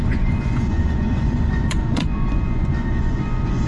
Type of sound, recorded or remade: remade